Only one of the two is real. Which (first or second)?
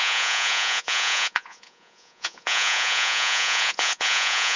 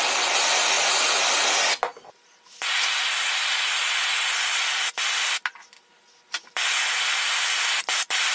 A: second